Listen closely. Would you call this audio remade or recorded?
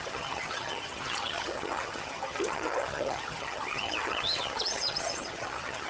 remade